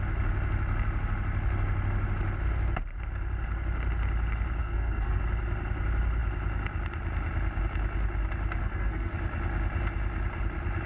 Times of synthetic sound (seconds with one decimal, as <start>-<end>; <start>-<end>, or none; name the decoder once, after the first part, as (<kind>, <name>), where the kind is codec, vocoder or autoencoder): 4.6-5.2 (codec, SNAC); 8.6-9.1